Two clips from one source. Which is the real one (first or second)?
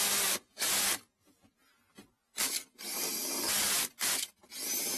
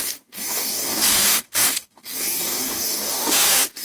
first